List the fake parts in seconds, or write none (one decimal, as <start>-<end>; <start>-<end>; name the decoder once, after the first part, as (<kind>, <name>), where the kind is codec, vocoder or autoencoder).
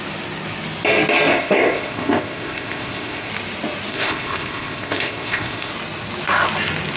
1.3-3.3 (codec, ZipCodec); 3.9-5.7